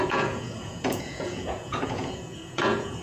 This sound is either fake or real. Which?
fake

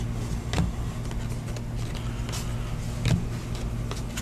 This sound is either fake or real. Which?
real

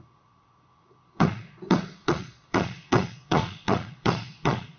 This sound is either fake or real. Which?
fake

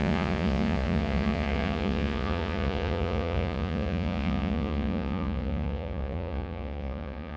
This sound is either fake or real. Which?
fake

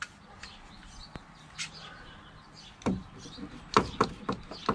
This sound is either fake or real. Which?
real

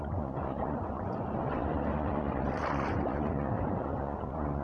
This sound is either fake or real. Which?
fake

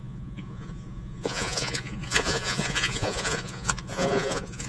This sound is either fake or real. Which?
fake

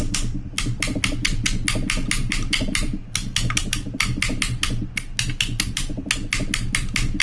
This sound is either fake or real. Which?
real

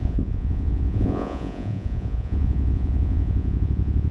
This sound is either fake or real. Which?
fake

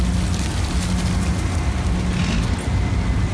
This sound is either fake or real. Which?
real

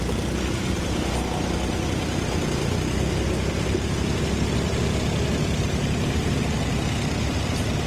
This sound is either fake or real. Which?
real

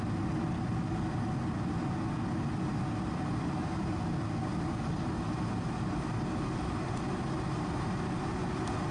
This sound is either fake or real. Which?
real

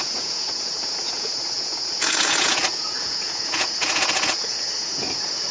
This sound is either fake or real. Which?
fake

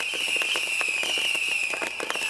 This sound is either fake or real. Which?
real